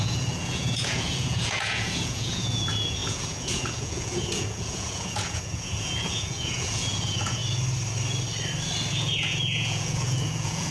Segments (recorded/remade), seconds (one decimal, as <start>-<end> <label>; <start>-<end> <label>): 0.0-7.4 remade; 7.4-8.9 recorded; 8.9-10.7 remade